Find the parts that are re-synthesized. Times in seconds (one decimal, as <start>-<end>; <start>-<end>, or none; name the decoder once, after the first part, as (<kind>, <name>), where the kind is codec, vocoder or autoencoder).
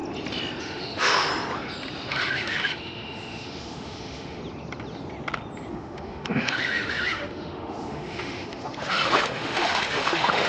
0.6-1.3 (autoencoder, DAC-VAE); 2.1-4.4; 5.7-10.5